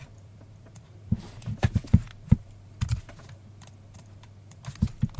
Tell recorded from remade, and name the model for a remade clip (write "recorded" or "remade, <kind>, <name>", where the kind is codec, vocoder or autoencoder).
recorded